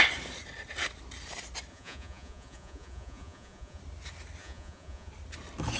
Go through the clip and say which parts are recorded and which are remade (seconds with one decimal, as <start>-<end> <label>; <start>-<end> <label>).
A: 0.0-1.7 recorded; 1.7-3.8 remade; 3.8-4.4 recorded; 4.4-5.1 remade; 5.1-5.8 recorded